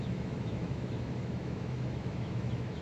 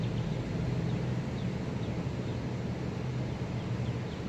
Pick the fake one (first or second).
first